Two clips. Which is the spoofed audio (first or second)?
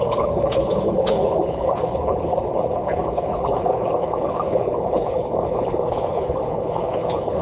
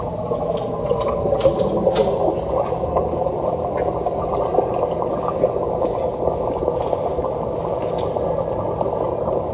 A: first